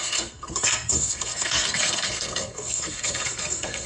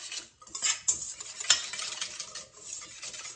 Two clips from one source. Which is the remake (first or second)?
first